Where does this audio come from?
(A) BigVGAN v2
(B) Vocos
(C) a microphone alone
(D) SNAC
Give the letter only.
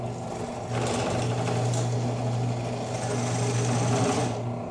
C